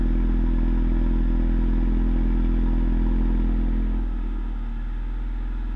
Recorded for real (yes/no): yes